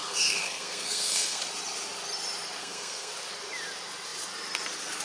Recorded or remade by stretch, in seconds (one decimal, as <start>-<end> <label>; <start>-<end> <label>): 0.0-1.4 remade; 1.4-2.6 recorded; 2.6-3.1 remade; 3.1-5.0 recorded